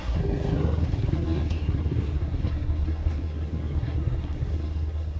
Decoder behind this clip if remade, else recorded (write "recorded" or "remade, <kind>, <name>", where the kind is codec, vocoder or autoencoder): remade, codec, SNAC